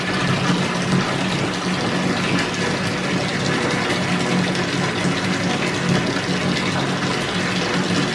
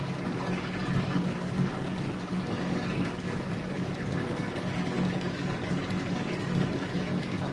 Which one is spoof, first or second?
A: second